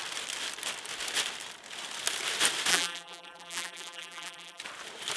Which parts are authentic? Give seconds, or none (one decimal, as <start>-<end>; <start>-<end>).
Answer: 0.0-2.7; 4.6-5.2